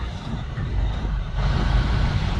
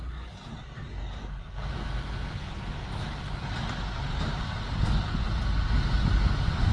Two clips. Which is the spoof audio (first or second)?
first